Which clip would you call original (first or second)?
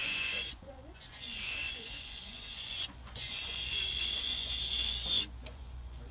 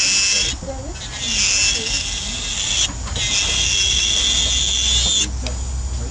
second